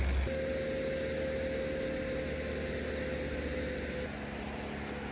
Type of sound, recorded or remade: recorded